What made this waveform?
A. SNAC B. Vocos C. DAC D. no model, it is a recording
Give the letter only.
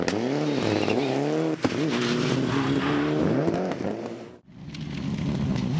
D